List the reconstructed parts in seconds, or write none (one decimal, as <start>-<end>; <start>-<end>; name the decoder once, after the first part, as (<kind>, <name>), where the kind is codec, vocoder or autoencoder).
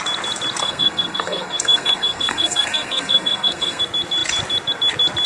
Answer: 0.6-3.8 (codec, SNAC)